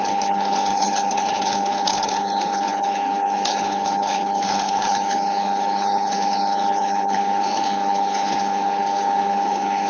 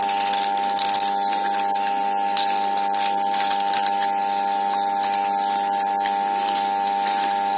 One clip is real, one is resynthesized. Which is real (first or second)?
second